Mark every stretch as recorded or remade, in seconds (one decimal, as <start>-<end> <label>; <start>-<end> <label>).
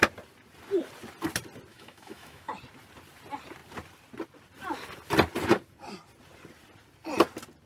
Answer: 0.0-1.7 recorded; 1.7-2.5 remade; 2.5-7.7 recorded